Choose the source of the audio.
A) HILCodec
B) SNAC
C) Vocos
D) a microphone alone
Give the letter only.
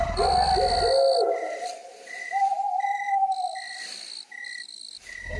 D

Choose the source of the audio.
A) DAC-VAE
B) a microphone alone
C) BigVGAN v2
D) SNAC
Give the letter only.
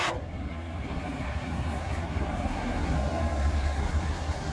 D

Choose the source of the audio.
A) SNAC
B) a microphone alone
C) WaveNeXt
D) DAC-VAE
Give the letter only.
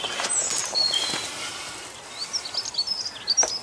B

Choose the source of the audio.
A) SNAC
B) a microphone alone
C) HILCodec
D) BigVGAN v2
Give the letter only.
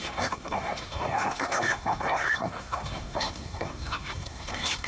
A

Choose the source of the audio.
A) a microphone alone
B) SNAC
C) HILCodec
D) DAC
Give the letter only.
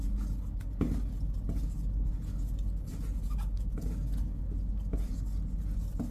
A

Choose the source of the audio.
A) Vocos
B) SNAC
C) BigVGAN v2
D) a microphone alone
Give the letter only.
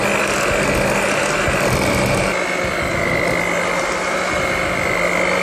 D